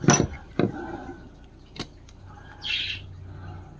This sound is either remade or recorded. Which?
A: recorded